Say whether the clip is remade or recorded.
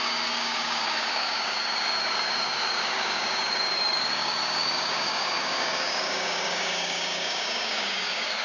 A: remade